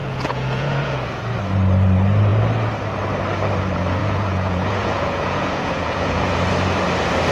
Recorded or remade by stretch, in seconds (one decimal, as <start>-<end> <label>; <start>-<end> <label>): 0.0-1.2 remade; 1.2-4.0 recorded; 4.0-6.3 remade; 6.3-7.3 recorded